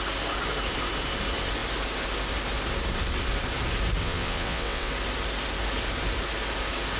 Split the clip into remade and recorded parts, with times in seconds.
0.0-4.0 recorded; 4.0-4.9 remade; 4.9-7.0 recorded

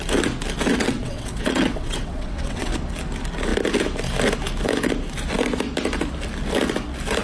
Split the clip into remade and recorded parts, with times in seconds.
0.0-0.7 recorded; 0.7-2.7 remade; 2.7-7.2 recorded